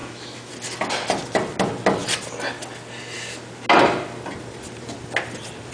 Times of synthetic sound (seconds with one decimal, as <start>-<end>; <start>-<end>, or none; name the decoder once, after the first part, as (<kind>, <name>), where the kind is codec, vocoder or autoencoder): 0.0-0.5 (autoencoder, DAC-VAE)